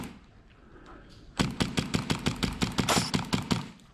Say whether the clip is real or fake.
real